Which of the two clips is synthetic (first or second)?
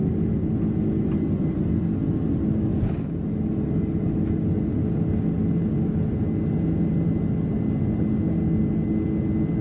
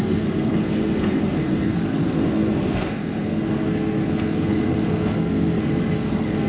second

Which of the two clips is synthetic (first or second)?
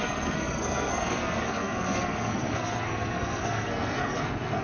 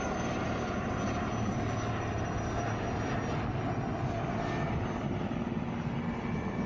first